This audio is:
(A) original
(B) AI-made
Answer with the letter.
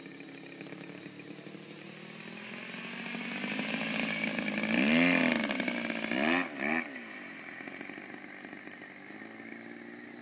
A